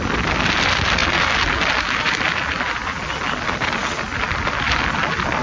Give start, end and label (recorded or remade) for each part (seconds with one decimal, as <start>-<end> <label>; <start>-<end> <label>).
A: 0.0-5.4 recorded